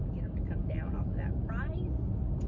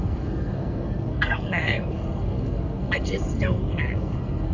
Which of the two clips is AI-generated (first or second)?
second